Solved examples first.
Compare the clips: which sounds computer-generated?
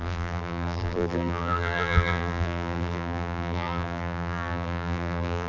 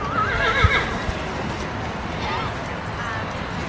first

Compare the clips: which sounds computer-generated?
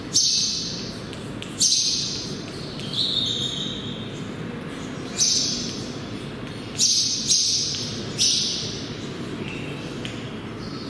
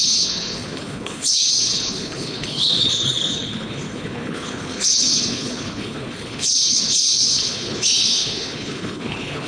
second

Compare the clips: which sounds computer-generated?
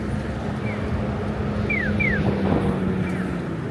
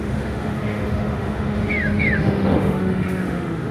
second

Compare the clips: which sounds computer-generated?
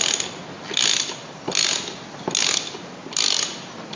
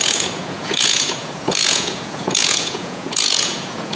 second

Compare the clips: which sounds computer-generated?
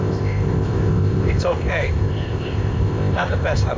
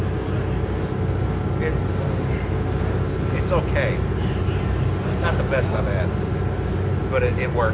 first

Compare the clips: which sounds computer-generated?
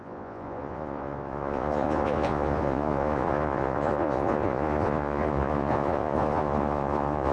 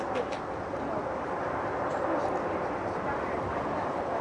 first